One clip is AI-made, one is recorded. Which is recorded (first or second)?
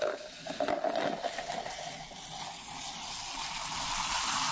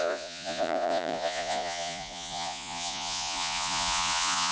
first